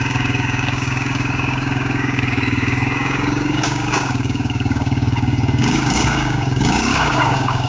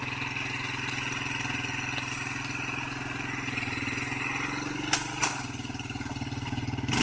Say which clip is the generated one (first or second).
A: first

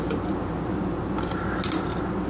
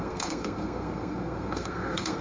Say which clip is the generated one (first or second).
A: second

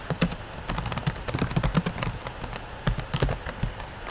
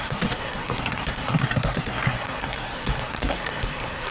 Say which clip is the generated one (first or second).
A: second